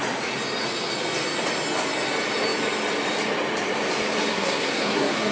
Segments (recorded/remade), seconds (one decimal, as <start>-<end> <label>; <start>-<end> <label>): 0.0-4.3 recorded; 4.3-5.3 remade